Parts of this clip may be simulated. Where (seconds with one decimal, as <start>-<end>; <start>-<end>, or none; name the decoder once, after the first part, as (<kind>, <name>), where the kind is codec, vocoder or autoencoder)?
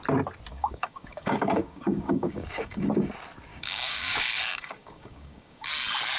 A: 0.5-3.1 (codec, DAC); 3.5-5.7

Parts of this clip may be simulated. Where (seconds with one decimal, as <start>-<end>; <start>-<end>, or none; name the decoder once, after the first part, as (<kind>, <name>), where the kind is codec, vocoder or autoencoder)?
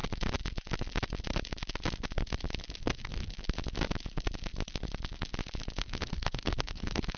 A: 2.8-3.3 (codec, SNAC); 5.8-7.2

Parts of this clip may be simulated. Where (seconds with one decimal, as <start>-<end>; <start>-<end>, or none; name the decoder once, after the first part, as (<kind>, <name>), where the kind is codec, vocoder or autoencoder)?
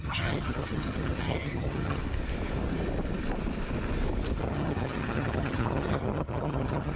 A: 0.0-2.0 (vocoder, HiFi-GAN); 4.4-7.0